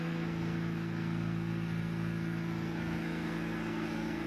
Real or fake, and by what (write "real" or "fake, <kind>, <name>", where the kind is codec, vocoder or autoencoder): fake, codec, SNAC